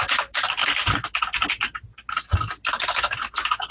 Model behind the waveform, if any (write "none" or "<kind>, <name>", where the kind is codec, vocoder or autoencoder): none